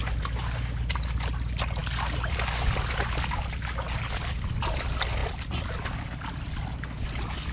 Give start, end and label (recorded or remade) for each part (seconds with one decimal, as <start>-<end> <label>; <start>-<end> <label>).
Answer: 0.0-7.5 recorded